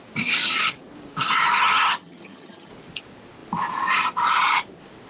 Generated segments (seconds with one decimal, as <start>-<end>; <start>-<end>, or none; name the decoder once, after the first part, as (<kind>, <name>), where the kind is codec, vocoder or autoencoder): 1.4-2.7 (vocoder, HiFi-GAN)